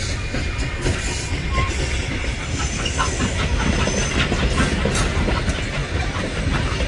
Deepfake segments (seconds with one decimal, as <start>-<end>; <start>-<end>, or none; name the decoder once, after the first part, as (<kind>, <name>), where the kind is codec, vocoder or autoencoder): none